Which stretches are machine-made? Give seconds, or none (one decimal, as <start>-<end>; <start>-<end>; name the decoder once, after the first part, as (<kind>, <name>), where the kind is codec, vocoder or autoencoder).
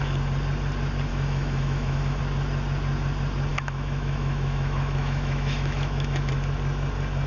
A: 1.1-2.2 (autoencoder, DAC-VAE); 3.5-6.3